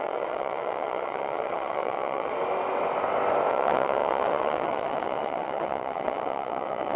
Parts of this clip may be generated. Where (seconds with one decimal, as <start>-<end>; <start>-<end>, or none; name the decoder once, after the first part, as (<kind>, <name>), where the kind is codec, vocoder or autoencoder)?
0.0-2.3 (vocoder, WaveNeXt); 3.5-7.0